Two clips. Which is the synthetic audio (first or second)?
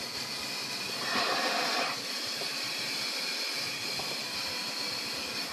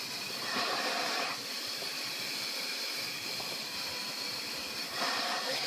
second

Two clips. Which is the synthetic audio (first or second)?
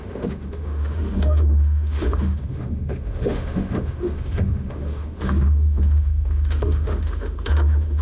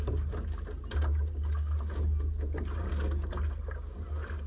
first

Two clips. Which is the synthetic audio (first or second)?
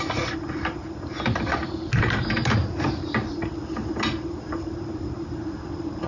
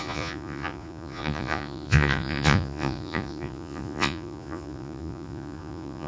second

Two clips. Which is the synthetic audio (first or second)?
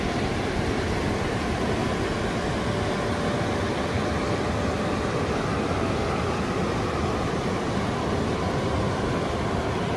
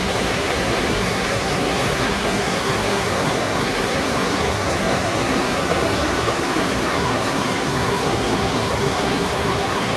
second